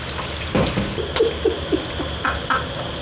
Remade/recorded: recorded